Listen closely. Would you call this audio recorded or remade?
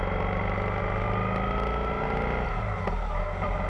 recorded